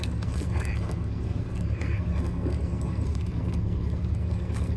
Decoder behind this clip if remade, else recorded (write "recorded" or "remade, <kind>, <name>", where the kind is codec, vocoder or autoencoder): remade, codec, SNAC